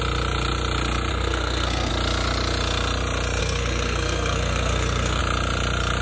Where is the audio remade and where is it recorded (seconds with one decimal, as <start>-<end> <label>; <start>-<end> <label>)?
0.0-1.1 recorded; 1.1-1.9 remade; 1.9-3.4 recorded; 3.4-5.2 remade; 5.2-6.0 recorded